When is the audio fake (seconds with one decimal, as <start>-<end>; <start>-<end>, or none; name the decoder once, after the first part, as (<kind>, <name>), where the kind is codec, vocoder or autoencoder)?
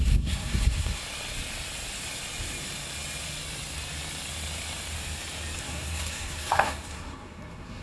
0.0-1.0 (codec, SNAC); 5.6-7.8